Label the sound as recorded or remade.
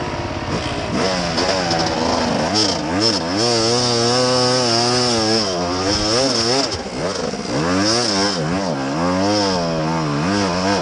recorded